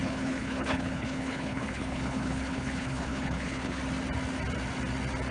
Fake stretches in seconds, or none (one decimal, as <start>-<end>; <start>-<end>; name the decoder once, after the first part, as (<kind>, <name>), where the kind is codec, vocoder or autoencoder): 0.0-3.8 (codec, HILCodec)